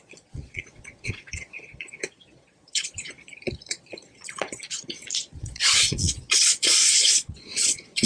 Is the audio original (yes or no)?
no